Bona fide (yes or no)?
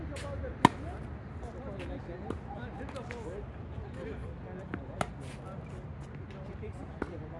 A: yes